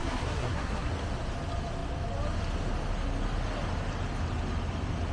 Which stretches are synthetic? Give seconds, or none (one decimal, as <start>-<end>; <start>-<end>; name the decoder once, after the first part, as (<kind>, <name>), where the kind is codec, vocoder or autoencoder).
0.0-0.9 (codec, SNAC)